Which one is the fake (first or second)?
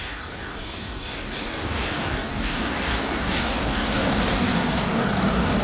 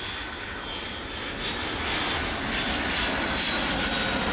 first